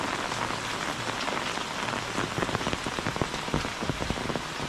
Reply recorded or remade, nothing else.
recorded